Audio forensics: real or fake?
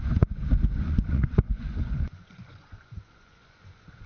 fake